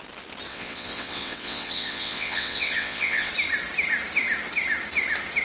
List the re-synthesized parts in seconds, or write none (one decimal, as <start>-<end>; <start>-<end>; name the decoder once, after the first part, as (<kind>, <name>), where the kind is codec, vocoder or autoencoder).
0.5-3.3 (vocoder, WaveNeXt)